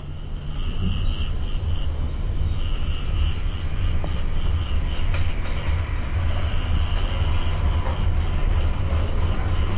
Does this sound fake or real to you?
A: real